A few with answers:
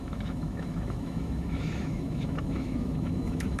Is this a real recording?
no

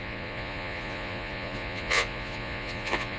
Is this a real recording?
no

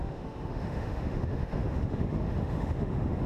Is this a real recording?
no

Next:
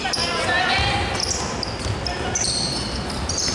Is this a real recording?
yes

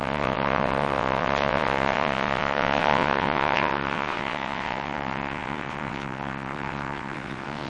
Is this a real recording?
no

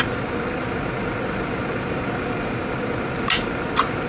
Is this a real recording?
yes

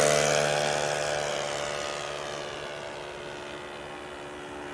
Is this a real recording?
yes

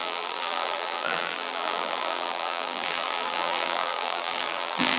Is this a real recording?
no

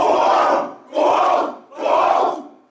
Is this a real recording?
no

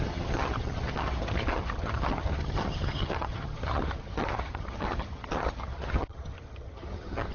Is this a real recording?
no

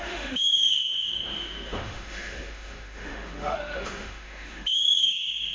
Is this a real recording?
no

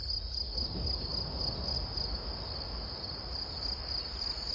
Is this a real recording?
yes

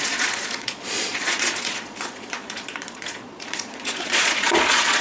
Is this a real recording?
no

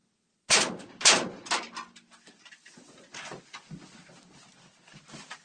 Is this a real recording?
yes